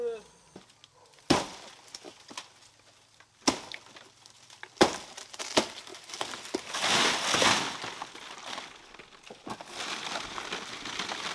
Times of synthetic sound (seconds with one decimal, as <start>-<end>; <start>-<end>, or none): none